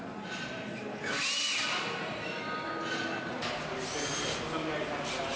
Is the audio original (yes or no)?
yes